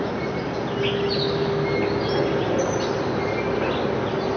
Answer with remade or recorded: recorded